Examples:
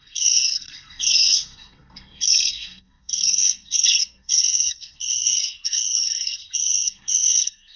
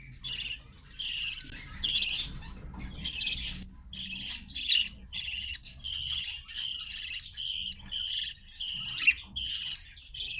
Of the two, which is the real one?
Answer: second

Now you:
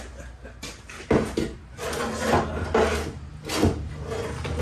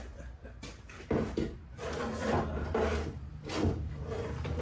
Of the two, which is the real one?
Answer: first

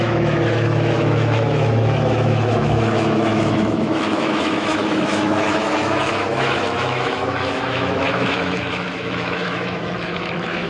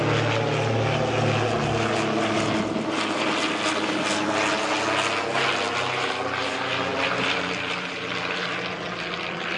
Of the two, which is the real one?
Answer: second